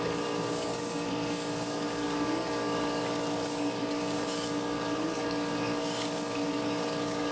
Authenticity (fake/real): fake